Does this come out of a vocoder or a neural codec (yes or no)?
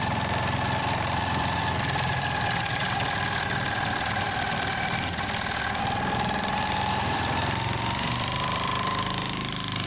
yes